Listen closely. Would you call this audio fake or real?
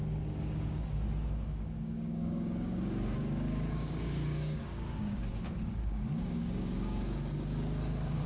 fake